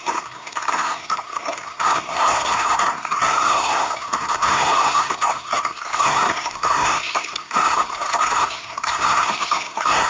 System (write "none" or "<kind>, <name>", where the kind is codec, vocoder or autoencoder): codec, SNAC